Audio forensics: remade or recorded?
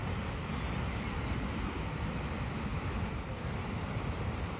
recorded